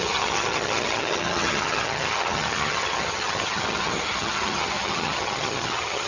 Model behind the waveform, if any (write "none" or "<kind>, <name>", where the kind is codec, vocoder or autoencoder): vocoder, HiFi-GAN